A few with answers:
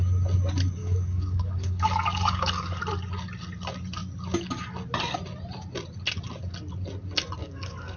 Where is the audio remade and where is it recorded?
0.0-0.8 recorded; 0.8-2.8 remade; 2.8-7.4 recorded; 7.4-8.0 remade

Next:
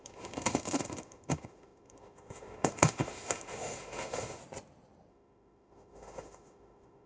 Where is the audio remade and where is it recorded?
0.0-4.4 remade; 4.4-5.1 recorded; 5.1-7.1 remade

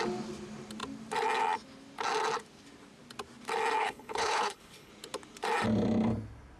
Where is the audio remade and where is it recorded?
0.0-3.8 recorded; 3.8-4.9 remade; 4.9-6.6 recorded

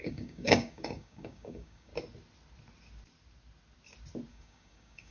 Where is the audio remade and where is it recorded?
0.0-1.9 remade; 1.9-4.3 recorded; 4.3-5.1 remade

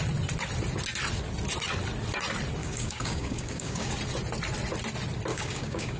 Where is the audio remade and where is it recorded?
0.0-2.6 recorded; 2.6-3.9 remade; 3.9-5.3 recorded; 5.3-6.0 remade

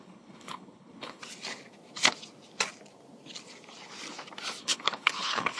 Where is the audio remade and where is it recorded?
0.0-1.2 remade; 1.2-4.6 recorded; 4.6-5.6 remade

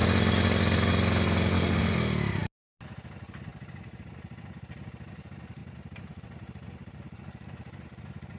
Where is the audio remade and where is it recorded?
0.0-3.5 recorded; 3.5-4.8 remade; 4.8-5.6 recorded; 5.6-7.2 remade; 7.2-8.4 recorded

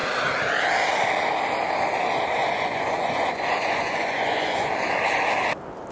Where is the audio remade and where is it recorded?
0.0-2.4 recorded; 2.4-4.7 remade; 4.7-5.9 recorded